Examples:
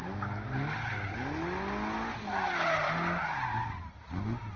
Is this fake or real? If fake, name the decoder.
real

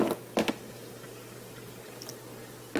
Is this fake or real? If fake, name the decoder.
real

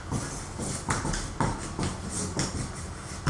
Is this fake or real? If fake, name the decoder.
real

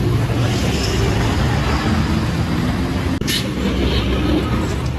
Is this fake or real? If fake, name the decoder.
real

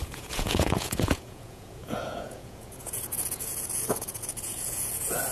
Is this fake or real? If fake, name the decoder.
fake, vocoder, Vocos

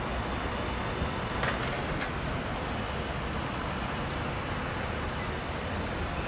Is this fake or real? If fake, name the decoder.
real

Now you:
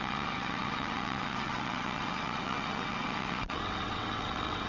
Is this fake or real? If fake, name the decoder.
fake, vocoder, WaveNeXt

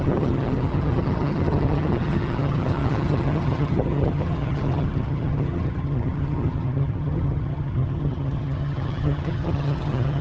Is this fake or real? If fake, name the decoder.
fake, vocoder, HiFi-GAN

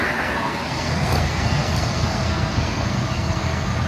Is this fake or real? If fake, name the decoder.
fake, codec, SNAC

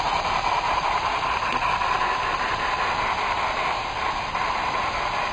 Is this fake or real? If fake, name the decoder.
real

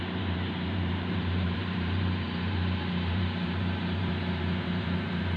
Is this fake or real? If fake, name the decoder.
fake, vocoder, BigVGAN v2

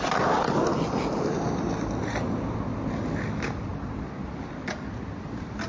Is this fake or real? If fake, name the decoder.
real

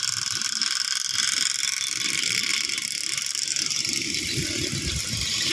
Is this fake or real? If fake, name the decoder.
real